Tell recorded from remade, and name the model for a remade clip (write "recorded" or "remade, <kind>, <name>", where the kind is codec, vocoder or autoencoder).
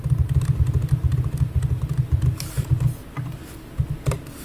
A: recorded